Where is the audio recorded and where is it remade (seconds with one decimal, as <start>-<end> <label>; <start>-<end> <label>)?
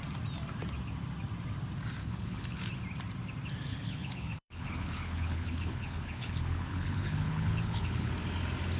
0.0-2.0 recorded; 2.0-2.7 remade; 2.7-3.7 recorded; 3.7-8.1 remade; 8.1-8.8 recorded